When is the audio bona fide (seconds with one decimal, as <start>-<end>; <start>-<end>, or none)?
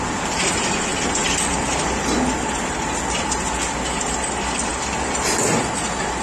0.0-6.2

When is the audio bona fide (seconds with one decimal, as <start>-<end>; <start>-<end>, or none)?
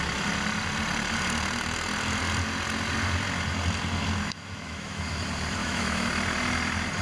0.0-4.2; 5.0-5.6; 6.1-7.0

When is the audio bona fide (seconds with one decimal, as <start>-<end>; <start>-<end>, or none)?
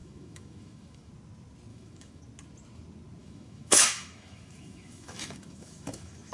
1.1-1.7; 2.2-3.2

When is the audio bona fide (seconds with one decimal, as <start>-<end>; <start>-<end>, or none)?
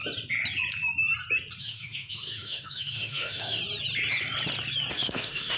0.0-1.6; 3.6-4.9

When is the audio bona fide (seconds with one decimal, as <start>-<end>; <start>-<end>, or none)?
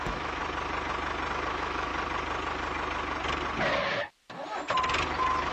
0.4-1.5; 1.9-5.5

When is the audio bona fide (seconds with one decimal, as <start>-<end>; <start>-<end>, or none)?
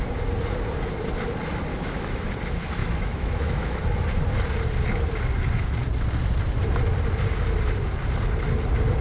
0.0-1.7; 2.3-2.8; 3.8-9.0